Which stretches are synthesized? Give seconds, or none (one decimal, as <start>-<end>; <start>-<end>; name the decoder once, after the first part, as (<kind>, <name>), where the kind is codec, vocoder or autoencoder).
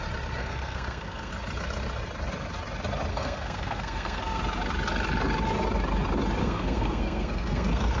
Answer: 0.4-1.3 (codec, SNAC); 3.1-4.4; 6.4-8.0